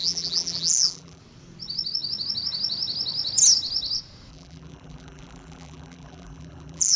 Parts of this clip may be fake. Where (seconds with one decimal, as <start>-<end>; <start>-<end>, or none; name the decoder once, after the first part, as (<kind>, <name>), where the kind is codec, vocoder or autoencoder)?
0.0-1.2 (vocoder, BigVGAN v2); 4.3-7.0